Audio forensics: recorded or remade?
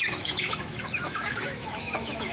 remade